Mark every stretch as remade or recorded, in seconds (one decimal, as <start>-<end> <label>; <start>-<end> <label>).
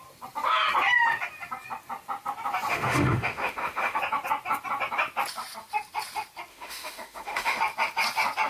0.0-2.7 recorded; 2.7-4.0 remade; 4.0-6.5 recorded; 6.5-7.6 remade; 7.6-8.5 recorded